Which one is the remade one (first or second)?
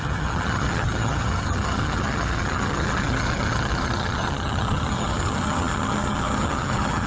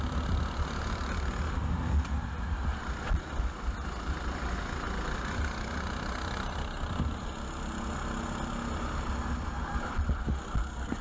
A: first